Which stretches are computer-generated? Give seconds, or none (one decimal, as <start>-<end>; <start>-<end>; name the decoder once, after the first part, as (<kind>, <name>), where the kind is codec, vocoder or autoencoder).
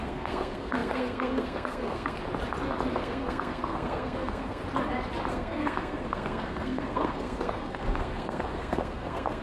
0.0-2.2 (codec, SNAC); 2.9-4.6; 5.3-9.4